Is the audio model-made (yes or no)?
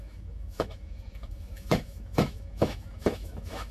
yes